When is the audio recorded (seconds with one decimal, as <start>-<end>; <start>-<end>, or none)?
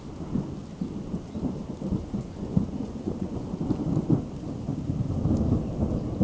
0.0-2.0; 3.5-6.2